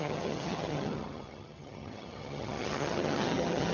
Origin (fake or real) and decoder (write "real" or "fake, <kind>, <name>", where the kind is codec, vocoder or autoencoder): fake, vocoder, HiFi-GAN